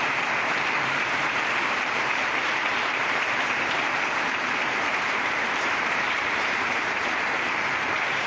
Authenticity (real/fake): fake